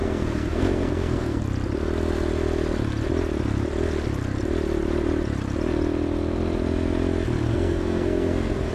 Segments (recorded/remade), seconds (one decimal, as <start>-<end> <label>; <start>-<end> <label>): 0.0-1.4 remade; 1.4-7.5 recorded; 7.5-8.7 remade